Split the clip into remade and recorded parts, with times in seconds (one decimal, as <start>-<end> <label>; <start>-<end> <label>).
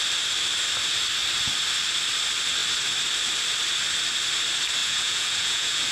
0.0-4.8 recorded; 4.8-5.9 remade